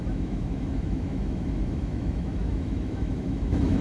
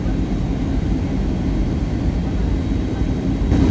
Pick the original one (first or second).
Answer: second